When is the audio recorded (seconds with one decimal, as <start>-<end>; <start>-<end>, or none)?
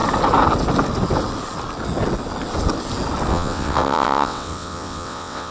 0.0-3.3